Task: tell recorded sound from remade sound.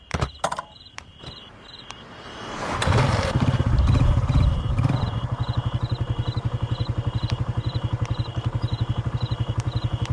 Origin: remade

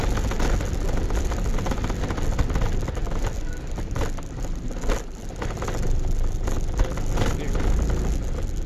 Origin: recorded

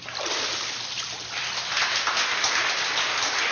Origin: recorded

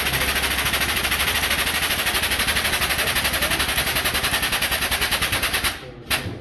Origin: recorded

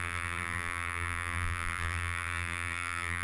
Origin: remade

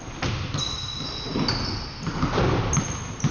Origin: recorded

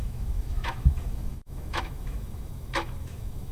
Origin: remade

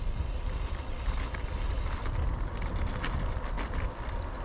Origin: recorded